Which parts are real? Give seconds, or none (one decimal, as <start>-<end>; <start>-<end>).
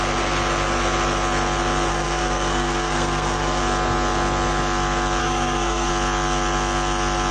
0.0-1.9; 3.6-5.2; 5.9-7.3